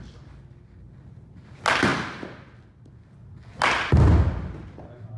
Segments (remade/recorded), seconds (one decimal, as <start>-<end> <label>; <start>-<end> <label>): 0.0-5.2 recorded